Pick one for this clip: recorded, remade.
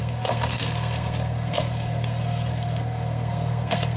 remade